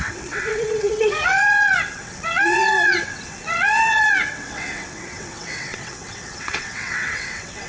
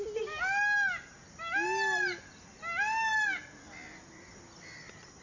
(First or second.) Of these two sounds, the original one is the second